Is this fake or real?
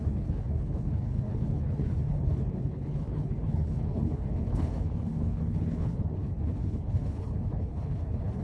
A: fake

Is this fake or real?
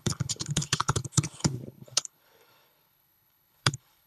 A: fake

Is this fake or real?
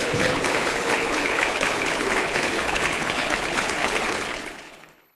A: fake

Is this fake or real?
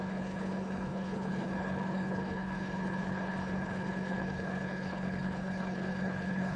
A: fake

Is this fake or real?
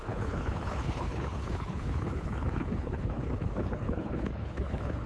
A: fake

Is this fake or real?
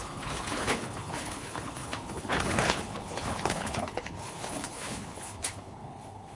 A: fake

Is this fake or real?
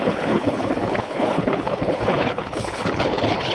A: fake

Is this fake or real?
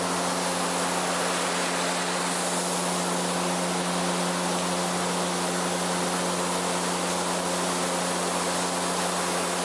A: real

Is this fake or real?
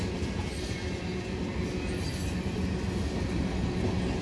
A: real